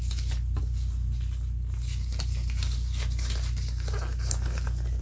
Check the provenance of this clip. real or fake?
real